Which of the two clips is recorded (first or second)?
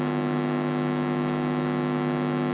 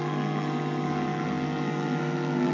first